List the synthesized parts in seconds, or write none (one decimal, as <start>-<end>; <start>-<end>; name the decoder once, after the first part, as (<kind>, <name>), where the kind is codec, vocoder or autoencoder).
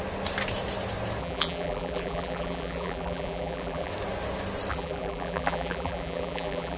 1.2-3.9 (vocoder, BigVGAN v2); 4.7-6.8